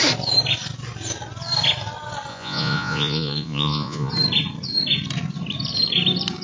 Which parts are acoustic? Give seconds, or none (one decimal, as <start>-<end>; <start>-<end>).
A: 0.0-2.3; 4.1-6.4